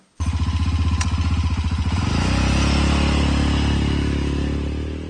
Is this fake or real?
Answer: real